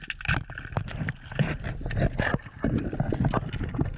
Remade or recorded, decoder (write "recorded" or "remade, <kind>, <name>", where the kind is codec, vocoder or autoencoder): recorded